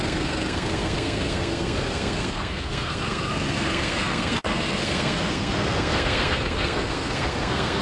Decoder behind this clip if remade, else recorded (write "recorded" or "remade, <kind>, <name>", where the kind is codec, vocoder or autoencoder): remade, codec, SNAC